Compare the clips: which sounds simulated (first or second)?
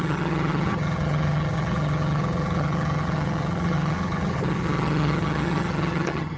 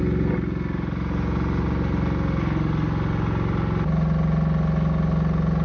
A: first